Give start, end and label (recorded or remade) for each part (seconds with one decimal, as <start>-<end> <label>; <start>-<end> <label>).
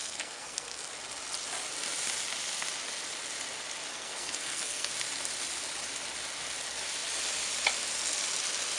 0.0-0.9 remade; 0.9-3.9 recorded; 3.9-4.9 remade; 4.9-8.8 recorded